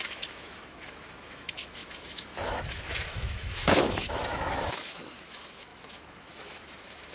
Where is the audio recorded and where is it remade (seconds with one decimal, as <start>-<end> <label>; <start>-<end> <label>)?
0.0-7.1 remade